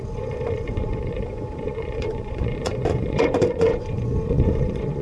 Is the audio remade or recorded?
remade